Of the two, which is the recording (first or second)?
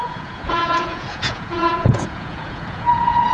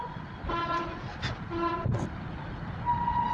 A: second